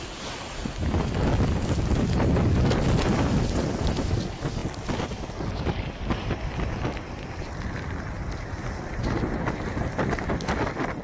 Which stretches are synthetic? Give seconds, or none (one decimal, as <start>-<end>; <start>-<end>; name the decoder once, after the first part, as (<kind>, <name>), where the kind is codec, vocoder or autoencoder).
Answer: none